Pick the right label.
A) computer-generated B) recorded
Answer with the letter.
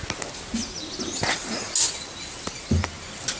B